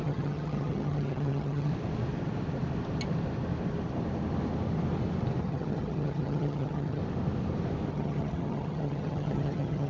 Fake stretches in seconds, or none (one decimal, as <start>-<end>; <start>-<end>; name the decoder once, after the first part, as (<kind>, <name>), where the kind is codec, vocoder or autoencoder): 0.0-1.7 (vocoder, HiFi-GAN); 5.4-7.0; 7.9-9.9